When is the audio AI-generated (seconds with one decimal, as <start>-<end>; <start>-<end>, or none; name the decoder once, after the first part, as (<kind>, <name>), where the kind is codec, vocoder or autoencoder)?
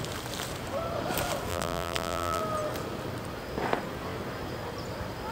1.5-2.4 (vocoder, BigVGAN v2)